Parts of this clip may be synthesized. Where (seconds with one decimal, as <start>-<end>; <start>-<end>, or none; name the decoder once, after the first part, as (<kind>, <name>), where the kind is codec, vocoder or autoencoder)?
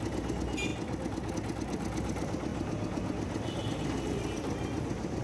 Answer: none